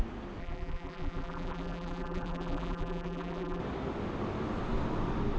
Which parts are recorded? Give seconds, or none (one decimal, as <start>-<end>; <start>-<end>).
0.0-0.4; 3.6-5.4